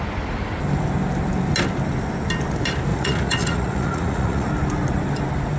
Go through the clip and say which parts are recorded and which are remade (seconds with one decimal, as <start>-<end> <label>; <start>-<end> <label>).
0.0-2.9 recorded; 2.9-4.5 remade; 4.5-5.6 recorded

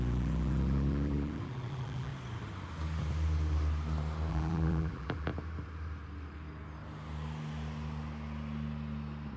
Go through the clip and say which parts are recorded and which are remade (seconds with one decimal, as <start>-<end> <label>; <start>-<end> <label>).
0.0-2.1 remade; 2.1-4.3 recorded; 4.3-5.3 remade; 5.3-9.4 recorded

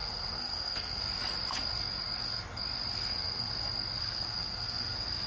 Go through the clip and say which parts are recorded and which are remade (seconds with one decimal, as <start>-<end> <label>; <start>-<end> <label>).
0.0-1.0 remade; 1.0-3.0 recorded; 3.0-3.5 remade; 3.5-4.0 recorded; 4.0-5.3 remade

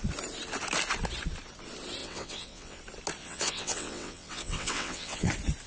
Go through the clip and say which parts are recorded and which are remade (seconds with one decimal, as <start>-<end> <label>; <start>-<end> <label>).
0.0-2.0 recorded; 2.0-2.8 remade; 2.8-3.2 recorded; 3.2-5.3 remade; 5.3-5.7 recorded

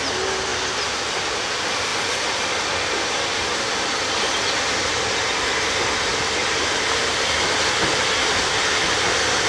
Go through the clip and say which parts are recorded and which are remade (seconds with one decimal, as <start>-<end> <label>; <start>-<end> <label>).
0.0-1.9 recorded; 1.9-3.2 remade; 3.2-9.5 recorded